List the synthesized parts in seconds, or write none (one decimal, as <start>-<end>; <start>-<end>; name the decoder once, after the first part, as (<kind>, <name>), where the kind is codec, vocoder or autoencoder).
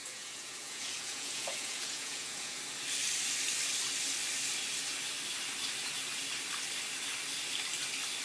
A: 0.0-2.6 (vocoder, Vocos)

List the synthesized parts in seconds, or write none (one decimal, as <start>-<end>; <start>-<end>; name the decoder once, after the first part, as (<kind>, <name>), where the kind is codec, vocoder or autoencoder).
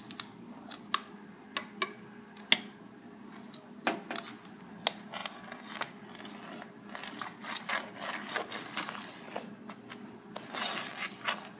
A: none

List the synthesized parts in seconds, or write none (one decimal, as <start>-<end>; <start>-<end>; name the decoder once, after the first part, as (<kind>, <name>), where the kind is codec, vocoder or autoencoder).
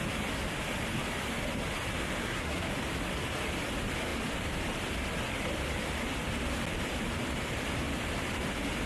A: 2.2-2.7 (codec, SNAC)